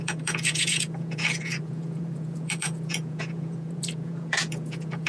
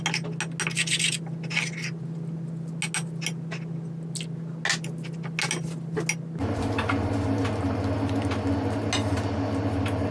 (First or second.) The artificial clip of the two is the first